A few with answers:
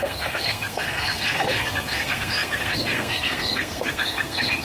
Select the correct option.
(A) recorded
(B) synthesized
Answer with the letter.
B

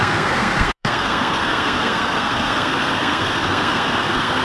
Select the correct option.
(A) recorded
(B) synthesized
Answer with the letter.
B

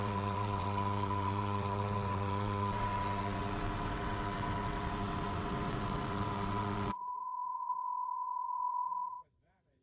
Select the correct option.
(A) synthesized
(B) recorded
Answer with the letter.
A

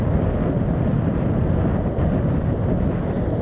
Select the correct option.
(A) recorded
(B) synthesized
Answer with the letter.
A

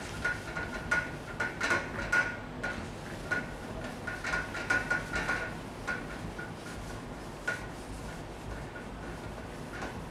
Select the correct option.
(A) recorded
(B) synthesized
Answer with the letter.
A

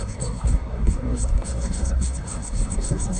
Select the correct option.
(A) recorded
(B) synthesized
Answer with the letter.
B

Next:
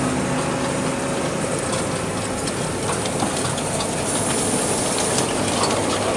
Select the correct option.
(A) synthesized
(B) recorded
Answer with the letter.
B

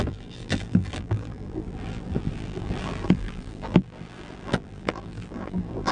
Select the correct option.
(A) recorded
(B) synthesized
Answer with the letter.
B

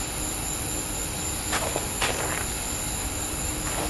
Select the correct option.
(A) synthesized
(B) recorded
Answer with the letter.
B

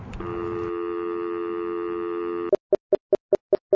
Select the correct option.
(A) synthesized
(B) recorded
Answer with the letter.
B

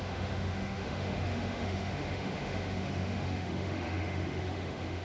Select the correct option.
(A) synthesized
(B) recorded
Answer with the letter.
A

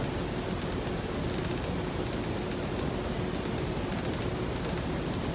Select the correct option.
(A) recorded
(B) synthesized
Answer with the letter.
A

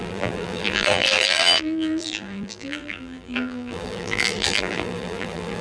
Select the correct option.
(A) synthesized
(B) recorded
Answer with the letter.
A